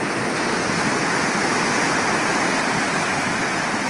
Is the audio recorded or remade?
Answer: recorded